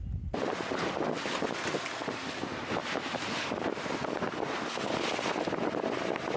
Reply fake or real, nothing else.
real